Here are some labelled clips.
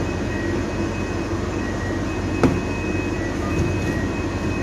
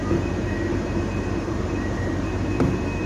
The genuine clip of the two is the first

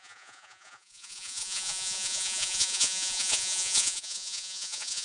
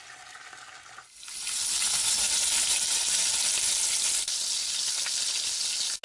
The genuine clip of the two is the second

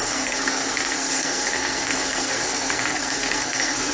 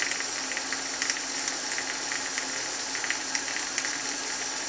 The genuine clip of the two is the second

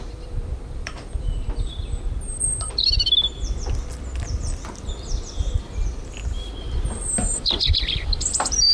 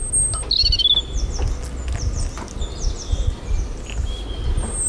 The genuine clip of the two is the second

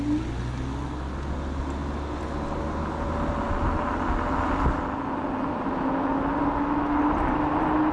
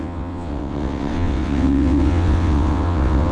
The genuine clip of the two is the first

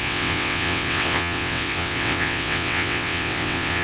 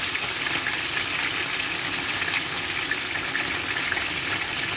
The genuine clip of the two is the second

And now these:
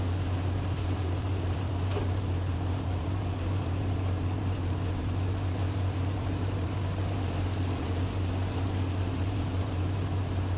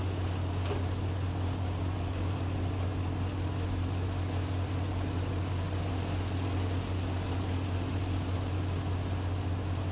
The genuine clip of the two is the second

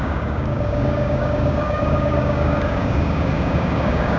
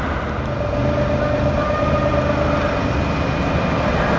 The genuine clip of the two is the second